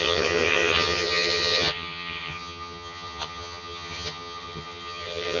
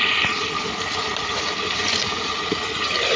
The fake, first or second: first